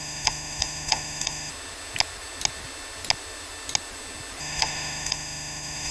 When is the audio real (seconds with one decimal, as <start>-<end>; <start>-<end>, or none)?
1.5-4.4